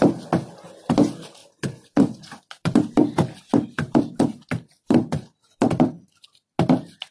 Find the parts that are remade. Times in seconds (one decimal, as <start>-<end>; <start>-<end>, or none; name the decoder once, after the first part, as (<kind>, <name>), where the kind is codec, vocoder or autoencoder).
1.4-5.7 (vocoder, BigVGAN v2)